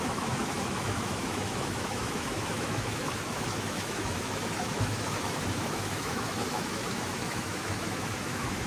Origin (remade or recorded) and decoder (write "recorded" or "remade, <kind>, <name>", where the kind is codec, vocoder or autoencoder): remade, autoencoder, DAC-VAE